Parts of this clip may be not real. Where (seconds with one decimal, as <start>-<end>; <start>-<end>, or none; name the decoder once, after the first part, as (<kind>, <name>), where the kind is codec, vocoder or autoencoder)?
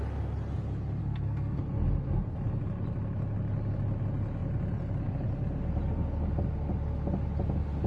1.0-1.6 (codec, SNAC)